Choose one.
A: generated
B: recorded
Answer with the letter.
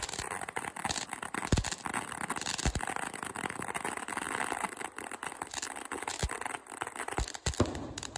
B